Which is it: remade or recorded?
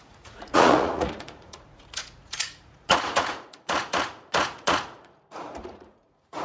remade